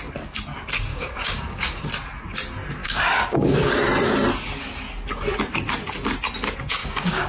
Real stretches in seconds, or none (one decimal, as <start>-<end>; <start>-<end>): 0.0-0.9; 1.8-2.8; 3.7-6.8